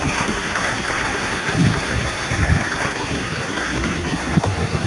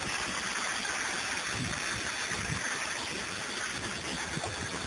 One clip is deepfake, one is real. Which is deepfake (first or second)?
first